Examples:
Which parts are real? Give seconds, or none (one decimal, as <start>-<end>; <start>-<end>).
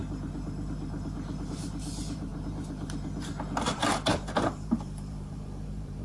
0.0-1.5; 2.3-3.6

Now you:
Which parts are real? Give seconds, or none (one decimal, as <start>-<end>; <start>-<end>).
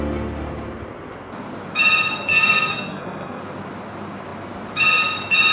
0.0-2.3; 3.4-5.5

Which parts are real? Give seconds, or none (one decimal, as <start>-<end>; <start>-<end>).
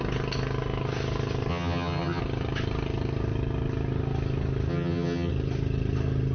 0.0-1.5; 2.2-4.7; 5.3-6.3